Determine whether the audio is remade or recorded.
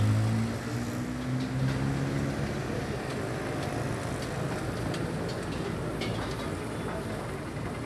recorded